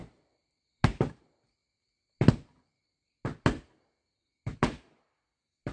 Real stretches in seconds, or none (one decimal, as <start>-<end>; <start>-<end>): 0.0-5.7